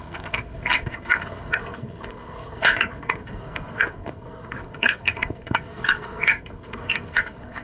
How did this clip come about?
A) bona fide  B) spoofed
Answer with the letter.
B